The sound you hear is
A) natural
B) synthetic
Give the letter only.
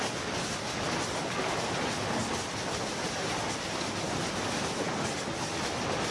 A